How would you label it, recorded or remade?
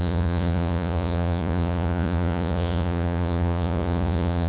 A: remade